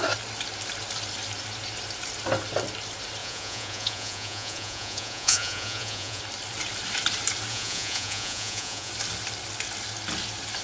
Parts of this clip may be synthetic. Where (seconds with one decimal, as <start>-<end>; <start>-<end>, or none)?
3.2-6.2; 7.5-8.9